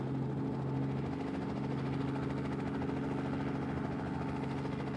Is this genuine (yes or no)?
yes